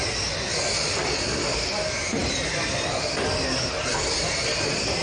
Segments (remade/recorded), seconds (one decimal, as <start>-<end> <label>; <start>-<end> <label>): 0.0-5.0 recorded